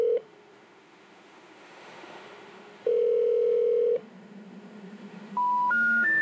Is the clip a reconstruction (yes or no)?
yes